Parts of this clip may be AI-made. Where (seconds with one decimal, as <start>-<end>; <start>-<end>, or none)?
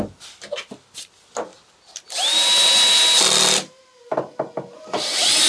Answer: none